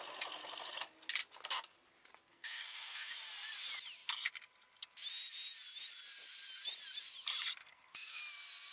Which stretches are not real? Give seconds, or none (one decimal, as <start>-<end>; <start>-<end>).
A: 2.3-3.1; 7.6-8.2